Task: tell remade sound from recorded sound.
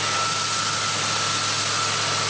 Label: recorded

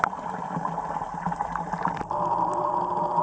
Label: recorded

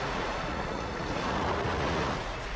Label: remade